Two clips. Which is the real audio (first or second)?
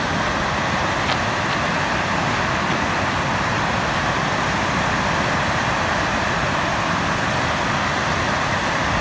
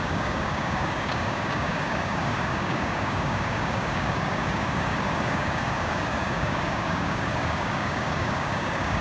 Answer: first